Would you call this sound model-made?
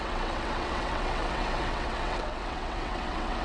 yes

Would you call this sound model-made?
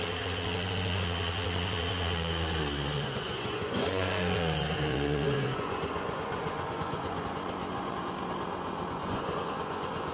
yes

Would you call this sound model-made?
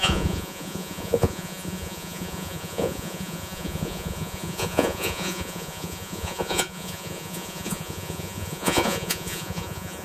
yes